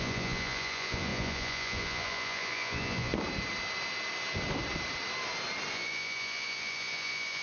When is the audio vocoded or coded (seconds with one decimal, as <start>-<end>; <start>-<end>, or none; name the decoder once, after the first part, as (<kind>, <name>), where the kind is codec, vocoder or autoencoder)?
0.0-3.1 (vocoder, Vocos); 5.7-7.4